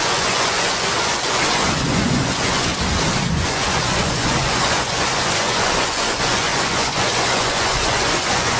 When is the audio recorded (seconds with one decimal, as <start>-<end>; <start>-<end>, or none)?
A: 2.7-3.3